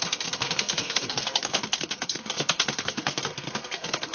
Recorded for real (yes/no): no